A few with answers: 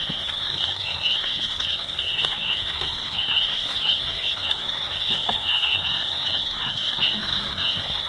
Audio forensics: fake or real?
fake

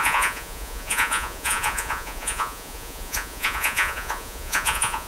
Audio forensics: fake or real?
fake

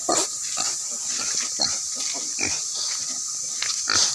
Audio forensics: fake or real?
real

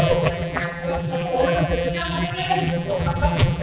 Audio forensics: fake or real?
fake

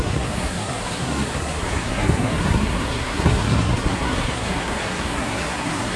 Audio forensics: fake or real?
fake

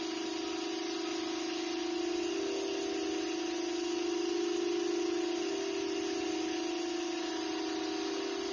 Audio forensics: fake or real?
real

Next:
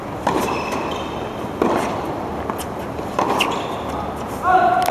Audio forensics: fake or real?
real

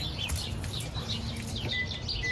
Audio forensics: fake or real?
real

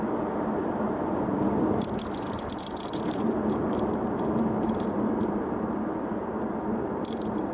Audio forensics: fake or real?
fake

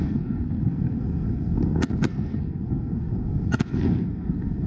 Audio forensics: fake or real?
fake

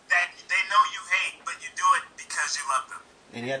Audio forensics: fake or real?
real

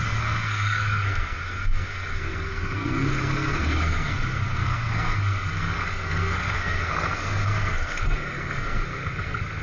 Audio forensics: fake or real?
fake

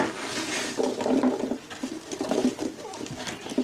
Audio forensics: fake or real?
real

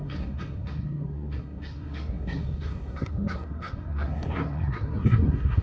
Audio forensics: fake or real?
fake